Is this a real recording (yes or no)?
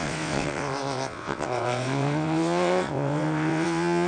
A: no